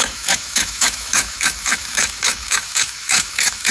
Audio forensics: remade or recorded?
remade